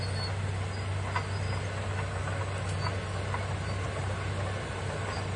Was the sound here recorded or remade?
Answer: recorded